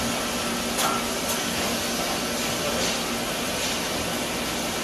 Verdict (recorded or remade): recorded